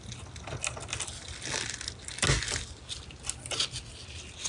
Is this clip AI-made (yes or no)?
no